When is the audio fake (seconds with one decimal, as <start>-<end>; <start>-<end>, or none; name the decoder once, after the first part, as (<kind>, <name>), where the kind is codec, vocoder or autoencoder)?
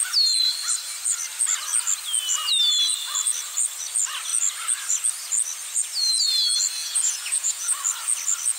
6.8-7.7 (vocoder, Vocos)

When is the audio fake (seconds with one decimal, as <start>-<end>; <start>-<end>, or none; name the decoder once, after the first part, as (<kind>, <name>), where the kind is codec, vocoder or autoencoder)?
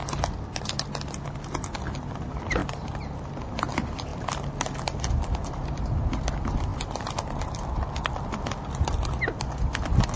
none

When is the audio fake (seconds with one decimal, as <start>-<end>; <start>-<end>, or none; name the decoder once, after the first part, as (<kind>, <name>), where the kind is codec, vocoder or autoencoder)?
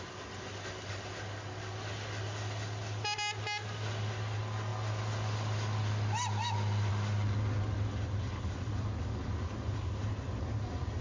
none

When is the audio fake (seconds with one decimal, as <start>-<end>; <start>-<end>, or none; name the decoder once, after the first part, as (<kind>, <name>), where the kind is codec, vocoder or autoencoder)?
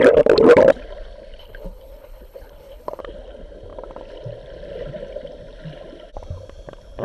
1.4-3.0 (codec, HILCodec)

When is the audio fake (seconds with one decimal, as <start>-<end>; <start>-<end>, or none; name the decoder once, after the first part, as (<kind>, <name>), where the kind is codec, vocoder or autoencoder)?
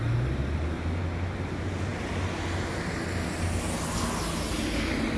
none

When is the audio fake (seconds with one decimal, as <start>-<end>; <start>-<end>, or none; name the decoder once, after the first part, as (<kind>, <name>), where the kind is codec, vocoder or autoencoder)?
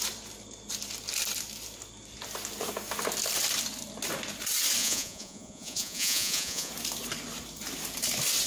4.8-6.7 (vocoder, Vocos)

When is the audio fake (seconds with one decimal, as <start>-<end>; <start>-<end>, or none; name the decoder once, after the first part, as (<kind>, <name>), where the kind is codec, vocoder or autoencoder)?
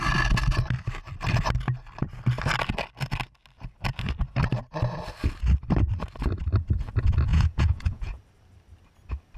7.3-8.2 (vocoder, Vocos)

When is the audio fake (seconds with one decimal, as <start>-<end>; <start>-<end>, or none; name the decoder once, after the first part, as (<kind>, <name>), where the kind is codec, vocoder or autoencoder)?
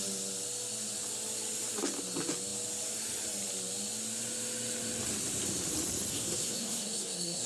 6.1-7.5 (codec, SNAC)